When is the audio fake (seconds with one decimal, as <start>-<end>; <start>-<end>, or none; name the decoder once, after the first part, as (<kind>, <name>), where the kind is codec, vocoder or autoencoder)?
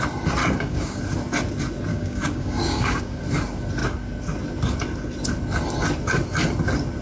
0.4-1.0 (codec, DAC); 1.9-3.2